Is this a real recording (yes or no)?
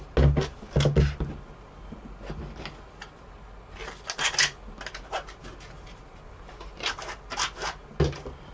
yes